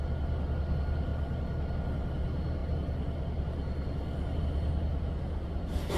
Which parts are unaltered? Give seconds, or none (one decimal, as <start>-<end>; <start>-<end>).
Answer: 0.0-6.0